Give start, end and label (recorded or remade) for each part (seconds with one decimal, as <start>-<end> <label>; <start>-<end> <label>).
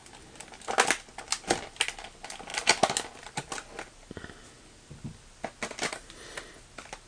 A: 0.0-7.1 recorded